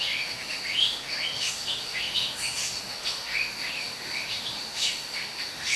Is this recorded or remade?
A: remade